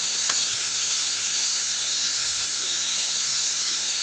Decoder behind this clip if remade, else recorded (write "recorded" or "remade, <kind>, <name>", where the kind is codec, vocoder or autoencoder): remade, codec, SNAC